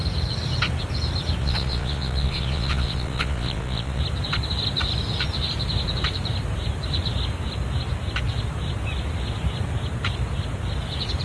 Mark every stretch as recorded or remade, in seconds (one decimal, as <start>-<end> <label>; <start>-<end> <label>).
0.0-1.4 recorded; 1.4-4.0 remade; 4.0-11.2 recorded